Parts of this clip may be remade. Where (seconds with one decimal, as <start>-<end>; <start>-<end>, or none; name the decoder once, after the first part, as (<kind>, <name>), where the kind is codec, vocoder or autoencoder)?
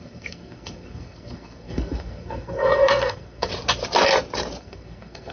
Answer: 0.0-3.5 (codec, SNAC); 4.6-5.3